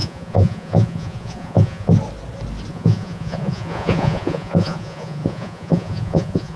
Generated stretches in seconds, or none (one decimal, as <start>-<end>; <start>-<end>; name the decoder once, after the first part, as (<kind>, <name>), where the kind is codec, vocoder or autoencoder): 0.0-1.9 (vocoder, Vocos); 2.7-6.6